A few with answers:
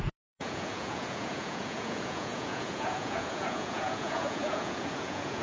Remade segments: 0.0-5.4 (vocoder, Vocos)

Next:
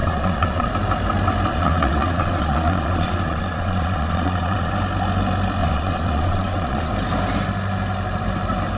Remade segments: 0.0-0.7 (vocoder, Vocos); 1.5-4.7; 5.6-6.9

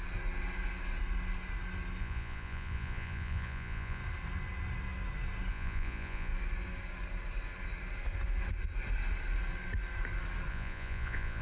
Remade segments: 2.0-4.0 (vocoder, Vocos); 5.5-6.3; 10.5-11.4

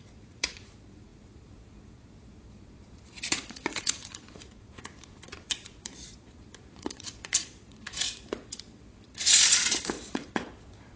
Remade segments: 0.0-11.0 (vocoder, Vocos)

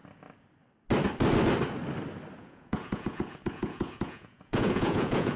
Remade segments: 2.4-5.4 (vocoder, Vocos)

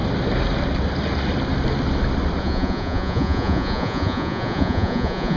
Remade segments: 2.4-5.4 (vocoder, Vocos)